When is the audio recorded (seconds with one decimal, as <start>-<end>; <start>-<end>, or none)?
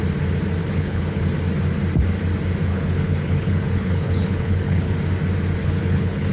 0.0-0.6; 1.2-2.7; 4.9-5.6